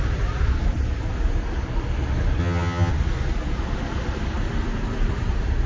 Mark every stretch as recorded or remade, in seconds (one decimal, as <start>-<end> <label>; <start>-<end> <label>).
0.0-2.4 recorded; 2.4-2.9 remade; 2.9-5.7 recorded